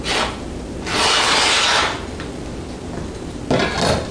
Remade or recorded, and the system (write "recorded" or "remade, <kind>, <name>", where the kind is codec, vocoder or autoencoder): recorded